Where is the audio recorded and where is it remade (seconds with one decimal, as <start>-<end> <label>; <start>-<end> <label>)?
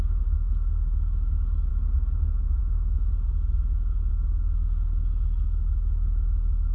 0.0-1.7 remade; 1.7-2.6 recorded; 2.6-3.1 remade; 3.1-4.1 recorded; 4.1-6.7 remade